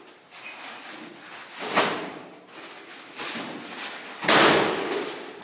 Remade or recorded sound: recorded